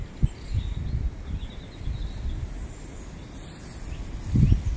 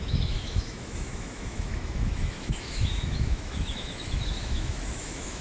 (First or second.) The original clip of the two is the first